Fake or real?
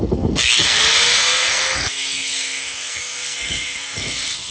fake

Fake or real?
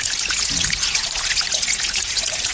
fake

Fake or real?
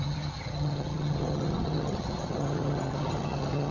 fake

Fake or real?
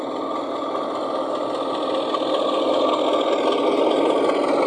real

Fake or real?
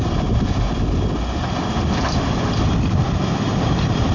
real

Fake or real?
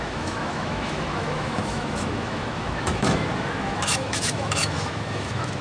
fake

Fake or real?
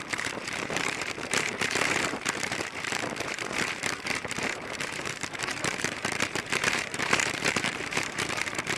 fake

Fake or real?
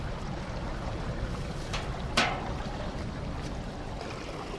fake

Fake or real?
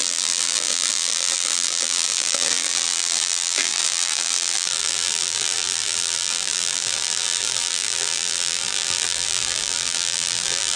fake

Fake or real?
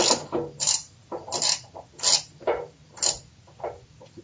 real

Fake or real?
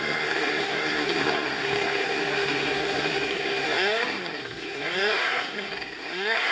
fake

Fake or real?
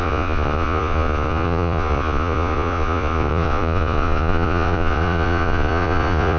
fake